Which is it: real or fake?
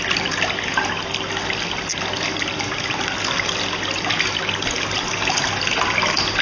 real